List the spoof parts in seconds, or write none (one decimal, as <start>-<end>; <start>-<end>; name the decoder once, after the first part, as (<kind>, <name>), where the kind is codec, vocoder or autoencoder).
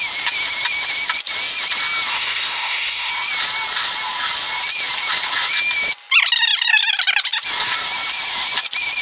2.1-3.1 (codec, SNAC)